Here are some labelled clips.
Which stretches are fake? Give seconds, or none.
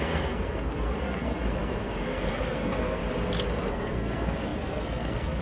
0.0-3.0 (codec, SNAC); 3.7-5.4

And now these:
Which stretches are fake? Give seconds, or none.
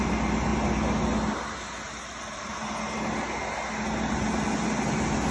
none